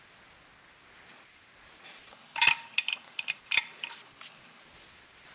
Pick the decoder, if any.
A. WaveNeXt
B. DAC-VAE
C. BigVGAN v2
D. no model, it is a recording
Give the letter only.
D